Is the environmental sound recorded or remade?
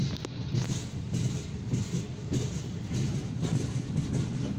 recorded